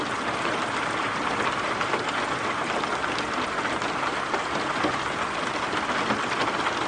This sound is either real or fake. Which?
real